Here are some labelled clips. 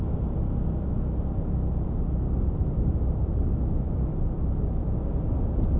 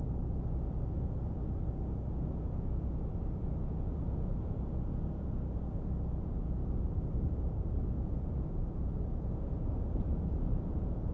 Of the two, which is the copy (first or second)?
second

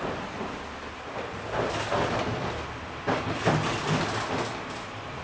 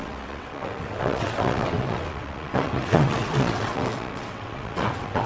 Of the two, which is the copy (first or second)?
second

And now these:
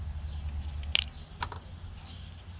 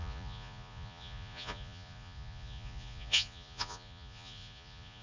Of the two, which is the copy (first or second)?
second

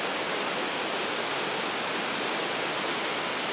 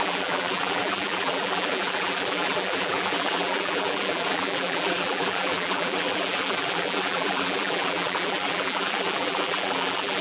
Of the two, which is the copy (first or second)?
second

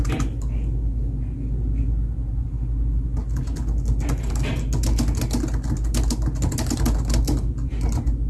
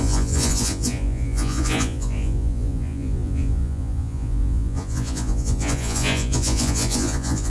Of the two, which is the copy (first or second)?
second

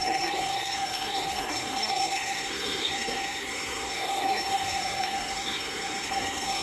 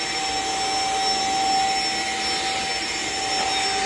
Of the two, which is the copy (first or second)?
first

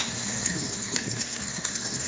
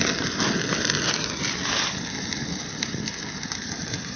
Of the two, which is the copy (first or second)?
first